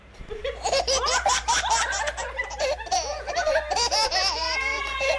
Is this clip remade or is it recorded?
remade